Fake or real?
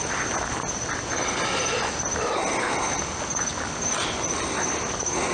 real